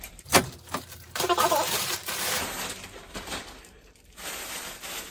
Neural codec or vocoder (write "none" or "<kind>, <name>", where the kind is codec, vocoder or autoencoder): vocoder, BigVGAN v2